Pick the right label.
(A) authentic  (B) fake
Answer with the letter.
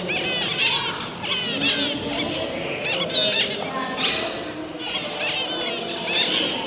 A